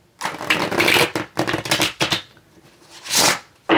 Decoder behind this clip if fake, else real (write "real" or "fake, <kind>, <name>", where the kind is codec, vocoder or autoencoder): real